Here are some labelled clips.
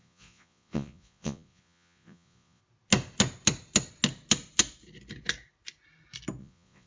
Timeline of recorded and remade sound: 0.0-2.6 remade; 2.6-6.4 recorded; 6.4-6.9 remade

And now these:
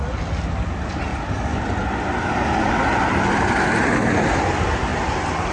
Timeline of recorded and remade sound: 0.0-1.1 recorded; 1.1-4.4 remade; 4.4-4.9 recorded; 4.9-5.5 remade

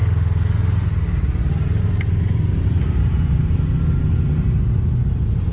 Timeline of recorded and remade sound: 0.0-5.5 recorded

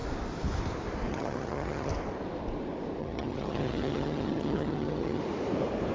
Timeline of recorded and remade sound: 0.0-1.1 recorded; 1.1-1.9 remade; 1.9-3.0 recorded; 3.0-5.2 remade; 5.2-5.9 recorded

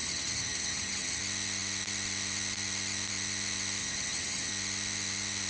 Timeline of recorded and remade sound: 0.0-1.2 remade; 1.2-3.8 recorded; 3.8-4.5 remade; 4.5-5.5 recorded

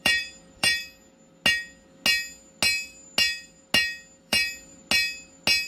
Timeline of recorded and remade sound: 0.0-0.8 remade; 0.8-4.2 recorded; 4.2-4.7 remade; 4.7-5.7 recorded

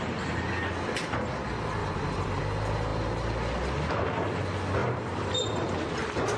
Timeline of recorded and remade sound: 0.0-1.8 recorded; 1.8-2.4 remade; 2.4-4.8 recorded; 4.8-5.9 remade; 5.9-6.4 recorded

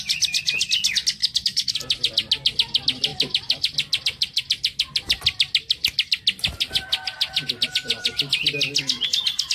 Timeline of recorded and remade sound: 0.0-1.2 recorded; 1.2-1.7 remade; 1.7-9.5 recorded